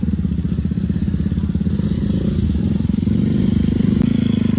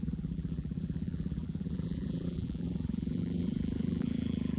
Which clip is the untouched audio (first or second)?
first